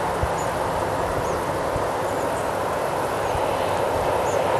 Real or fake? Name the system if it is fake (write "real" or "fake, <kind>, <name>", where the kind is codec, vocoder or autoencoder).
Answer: real